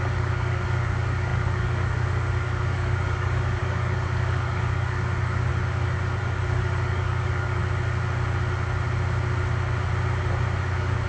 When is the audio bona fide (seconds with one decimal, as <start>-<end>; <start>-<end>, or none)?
5.5-6.2; 7.6-10.6